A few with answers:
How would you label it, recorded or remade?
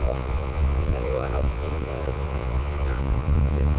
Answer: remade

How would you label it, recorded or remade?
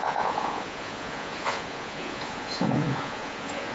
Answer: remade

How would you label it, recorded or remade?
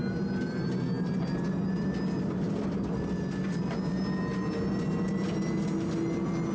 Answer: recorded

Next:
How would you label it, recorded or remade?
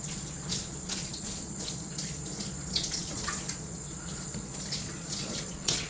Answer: remade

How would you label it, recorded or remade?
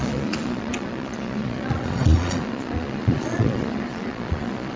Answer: remade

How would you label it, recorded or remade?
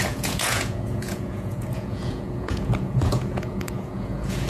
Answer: remade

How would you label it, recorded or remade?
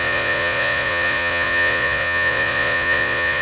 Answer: remade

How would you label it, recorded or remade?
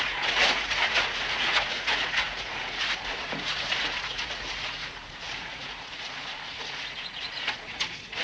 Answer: remade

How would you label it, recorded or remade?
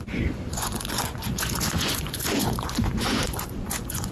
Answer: remade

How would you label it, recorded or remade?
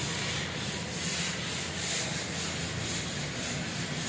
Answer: recorded